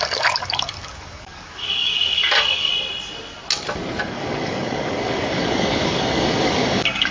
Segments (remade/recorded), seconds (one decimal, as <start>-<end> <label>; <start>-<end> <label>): 0.0-2.7 remade; 2.7-4.0 recorded; 4.0-7.1 remade